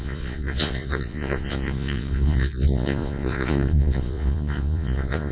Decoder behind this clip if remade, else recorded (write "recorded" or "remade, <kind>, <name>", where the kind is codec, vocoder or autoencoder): remade, vocoder, Vocos